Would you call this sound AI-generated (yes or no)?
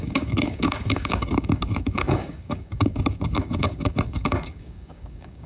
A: yes